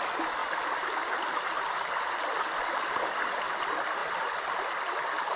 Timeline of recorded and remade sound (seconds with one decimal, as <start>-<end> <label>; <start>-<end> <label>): 0.0-4.0 recorded; 4.0-4.6 remade; 4.6-5.4 recorded